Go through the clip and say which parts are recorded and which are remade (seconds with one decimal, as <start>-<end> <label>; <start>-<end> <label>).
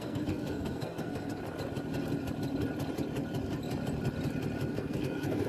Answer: 0.0-1.4 remade; 1.4-4.7 recorded; 4.7-5.5 remade